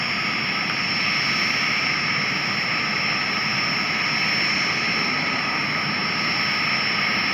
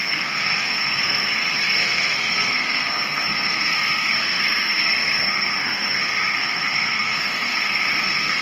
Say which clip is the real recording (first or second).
first